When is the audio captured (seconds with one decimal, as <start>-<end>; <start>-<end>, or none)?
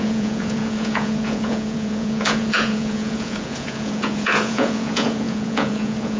none